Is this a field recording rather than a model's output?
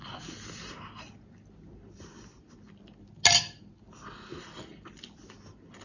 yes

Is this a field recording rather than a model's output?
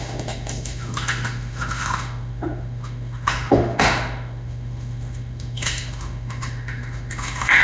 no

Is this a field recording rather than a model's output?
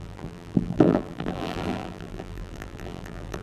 no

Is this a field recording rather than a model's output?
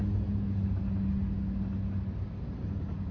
yes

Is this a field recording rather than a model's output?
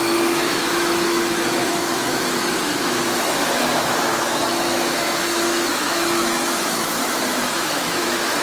no